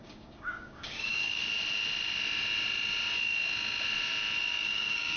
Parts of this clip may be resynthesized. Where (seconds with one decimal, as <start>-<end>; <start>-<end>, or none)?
0.0-1.4; 4.5-5.2